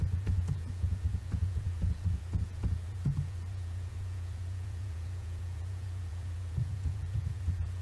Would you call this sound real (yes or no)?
no